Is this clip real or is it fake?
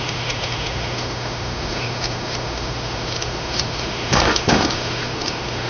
fake